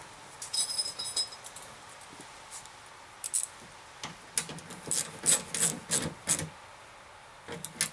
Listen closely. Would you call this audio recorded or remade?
recorded